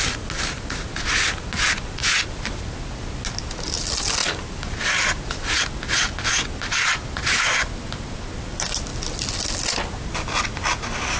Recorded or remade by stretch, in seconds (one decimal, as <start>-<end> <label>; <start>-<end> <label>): 0.0-4.2 recorded; 4.2-5.6 remade; 5.6-11.2 recorded